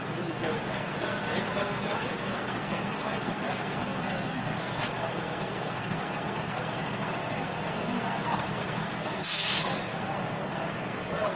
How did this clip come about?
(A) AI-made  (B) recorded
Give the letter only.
A